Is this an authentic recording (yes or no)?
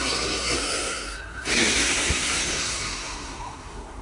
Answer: no